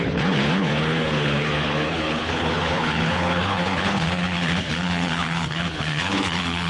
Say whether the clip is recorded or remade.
remade